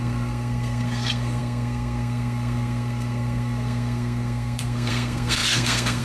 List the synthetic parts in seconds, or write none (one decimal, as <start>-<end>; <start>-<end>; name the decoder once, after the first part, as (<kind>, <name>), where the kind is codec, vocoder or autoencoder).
0.0-6.0 (codec, SNAC)